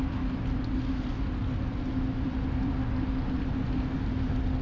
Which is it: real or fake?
real